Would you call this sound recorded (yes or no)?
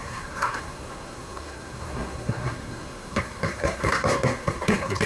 no